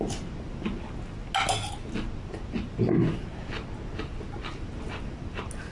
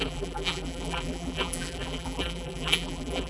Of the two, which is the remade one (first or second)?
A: second